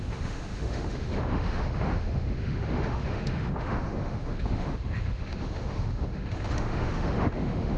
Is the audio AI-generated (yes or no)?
yes